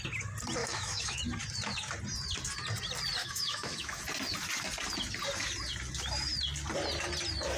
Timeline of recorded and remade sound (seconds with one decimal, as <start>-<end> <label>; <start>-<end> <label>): 0.0-0.6 recorded; 0.6-1.2 remade; 1.2-3.2 recorded; 3.2-4.0 remade; 4.0-7.6 recorded